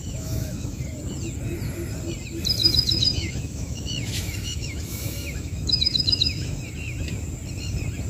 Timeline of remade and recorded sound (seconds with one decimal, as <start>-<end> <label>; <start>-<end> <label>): 0.0-0.8 remade; 0.8-2.6 recorded; 2.6-6.6 remade; 6.6-8.1 recorded